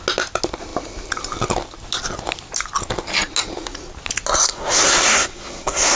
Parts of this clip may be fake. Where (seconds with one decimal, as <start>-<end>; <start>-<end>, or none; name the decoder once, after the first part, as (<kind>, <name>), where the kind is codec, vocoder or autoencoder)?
4.4-6.0 (codec, SNAC)